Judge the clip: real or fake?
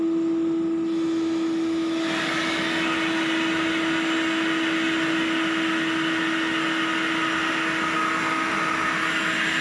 real